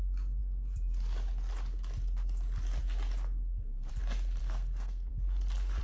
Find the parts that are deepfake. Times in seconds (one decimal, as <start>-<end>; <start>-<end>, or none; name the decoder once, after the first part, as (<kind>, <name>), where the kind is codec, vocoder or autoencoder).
4.4-5.1 (codec, SNAC)